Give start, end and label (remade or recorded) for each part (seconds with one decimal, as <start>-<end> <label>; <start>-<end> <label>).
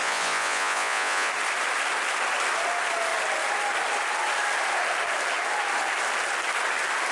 0.0-1.3 remade; 1.3-7.1 recorded